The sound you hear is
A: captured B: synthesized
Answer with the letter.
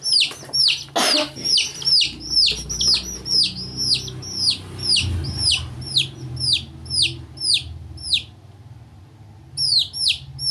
A